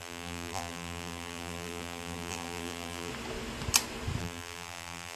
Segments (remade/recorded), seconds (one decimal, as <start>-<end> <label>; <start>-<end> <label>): 0.0-3.1 remade; 3.1-4.2 recorded; 4.2-5.2 remade

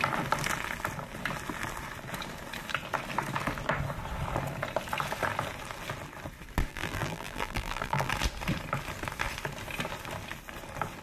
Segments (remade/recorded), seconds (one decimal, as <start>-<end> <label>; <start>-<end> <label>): 0.0-6.7 recorded; 6.7-8.1 remade; 8.1-11.0 recorded